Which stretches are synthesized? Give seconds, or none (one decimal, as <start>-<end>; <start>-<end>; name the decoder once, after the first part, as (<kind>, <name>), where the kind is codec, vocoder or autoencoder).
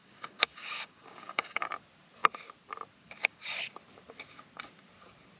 0.0-1.7 (codec, DAC); 3.2-3.7